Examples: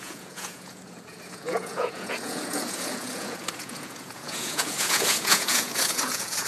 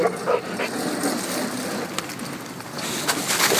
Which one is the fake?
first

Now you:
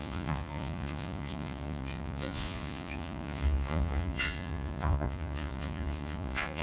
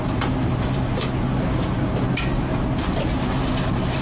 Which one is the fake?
first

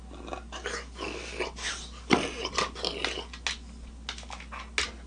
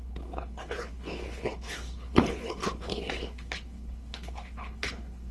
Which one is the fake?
second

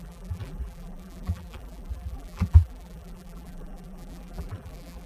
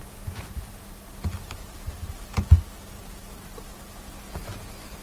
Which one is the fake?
first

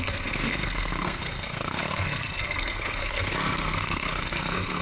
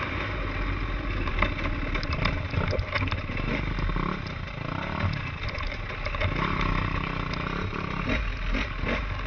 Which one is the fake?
first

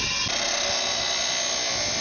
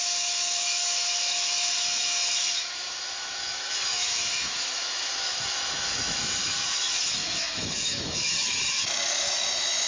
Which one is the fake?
second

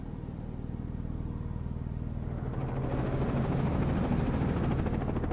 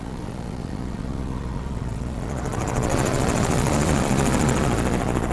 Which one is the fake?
second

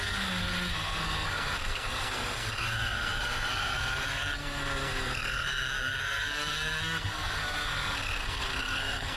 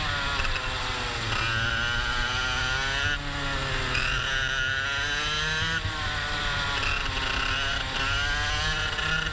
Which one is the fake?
first